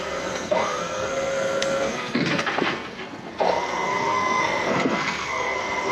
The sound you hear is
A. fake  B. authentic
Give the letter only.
A